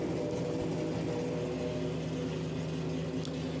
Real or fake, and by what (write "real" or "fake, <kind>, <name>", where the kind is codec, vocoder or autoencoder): real